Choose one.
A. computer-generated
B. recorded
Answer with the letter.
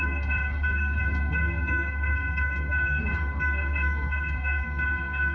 A